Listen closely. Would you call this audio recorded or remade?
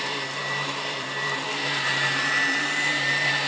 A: remade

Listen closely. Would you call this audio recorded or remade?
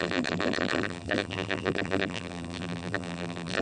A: remade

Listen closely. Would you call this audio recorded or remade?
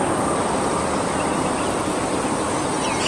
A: recorded